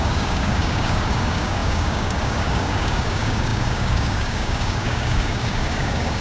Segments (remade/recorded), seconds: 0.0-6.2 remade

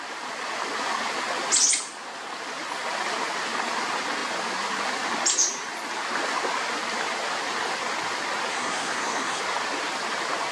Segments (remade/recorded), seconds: 0.0-8.5 recorded; 8.5-9.4 remade; 9.4-10.5 recorded

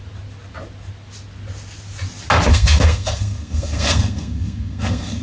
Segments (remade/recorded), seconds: 0.0-2.5 recorded; 2.5-5.2 remade

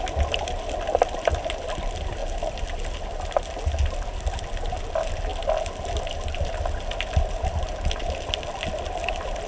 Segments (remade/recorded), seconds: 0.0-9.5 recorded

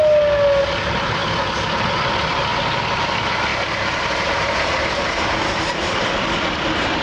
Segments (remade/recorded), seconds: 0.0-3.5 recorded; 3.5-6.0 remade; 6.0-7.0 recorded

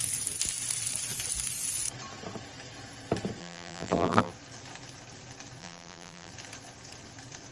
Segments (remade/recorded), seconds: 0.0-3.4 recorded; 3.4-4.3 remade; 4.3-5.6 recorded; 5.6-6.3 remade; 6.3-7.5 recorded

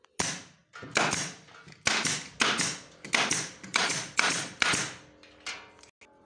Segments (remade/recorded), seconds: 0.0-3.7 recorded; 3.7-4.7 remade; 4.7-6.3 recorded